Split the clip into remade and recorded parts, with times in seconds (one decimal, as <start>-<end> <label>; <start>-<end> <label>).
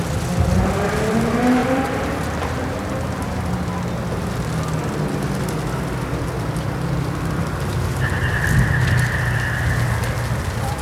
0.0-1.6 recorded; 1.6-3.5 remade; 3.5-10.8 recorded